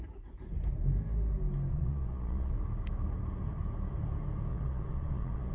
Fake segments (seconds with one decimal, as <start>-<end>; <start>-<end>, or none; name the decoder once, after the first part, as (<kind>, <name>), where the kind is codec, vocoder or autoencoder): 1.7-2.5 (vocoder, Vocos); 4.5-5.5